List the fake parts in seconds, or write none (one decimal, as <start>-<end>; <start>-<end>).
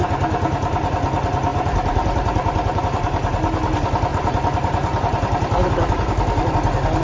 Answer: 1.5-2.8; 4.1-6.5